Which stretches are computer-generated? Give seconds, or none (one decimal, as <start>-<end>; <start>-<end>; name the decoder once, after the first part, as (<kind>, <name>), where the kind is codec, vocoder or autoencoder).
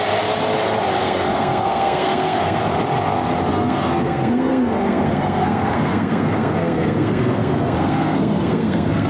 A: 1.0-2.6 (codec, SNAC); 3.5-9.1